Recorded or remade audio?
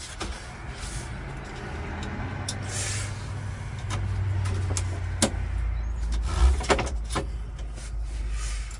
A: recorded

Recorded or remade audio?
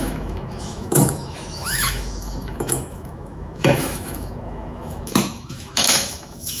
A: remade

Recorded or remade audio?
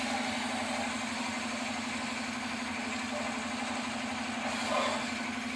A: recorded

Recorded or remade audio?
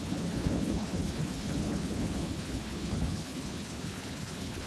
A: remade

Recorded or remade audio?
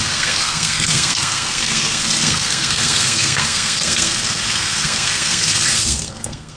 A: remade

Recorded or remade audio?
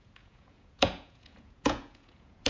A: remade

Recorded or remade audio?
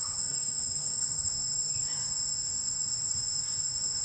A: remade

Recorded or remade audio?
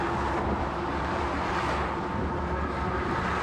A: recorded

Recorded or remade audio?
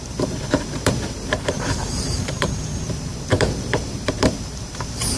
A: remade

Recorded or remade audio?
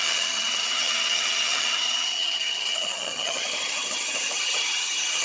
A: remade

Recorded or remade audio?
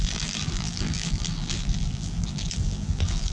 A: remade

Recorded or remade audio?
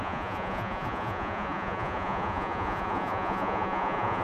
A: remade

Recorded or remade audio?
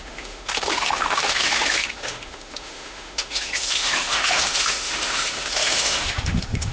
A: remade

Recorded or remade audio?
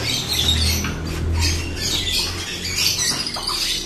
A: recorded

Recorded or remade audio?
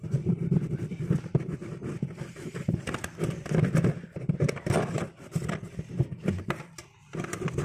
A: remade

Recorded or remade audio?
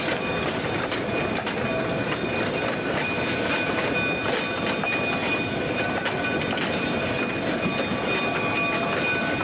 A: recorded